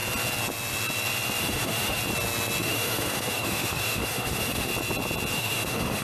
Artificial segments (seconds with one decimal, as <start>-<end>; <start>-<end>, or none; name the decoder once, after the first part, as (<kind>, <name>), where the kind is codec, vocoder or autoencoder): 1.4-2.0 (autoencoder, DAC-VAE); 2.6-4.7; 5.3-6.0